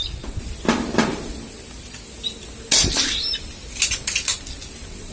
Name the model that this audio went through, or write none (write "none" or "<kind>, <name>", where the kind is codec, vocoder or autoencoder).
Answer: none